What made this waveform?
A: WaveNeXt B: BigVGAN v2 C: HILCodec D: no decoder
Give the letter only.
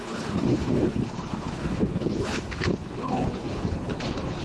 C